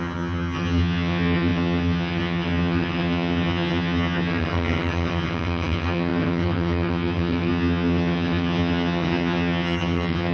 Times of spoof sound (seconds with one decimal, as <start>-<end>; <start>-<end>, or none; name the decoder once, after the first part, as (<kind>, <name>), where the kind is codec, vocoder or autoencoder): 0.0-10.3 (vocoder, HiFi-GAN)